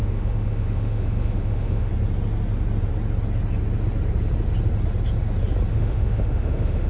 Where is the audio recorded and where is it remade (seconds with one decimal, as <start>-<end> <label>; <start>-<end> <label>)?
0.0-1.9 remade; 1.9-5.7 recorded; 5.7-6.9 remade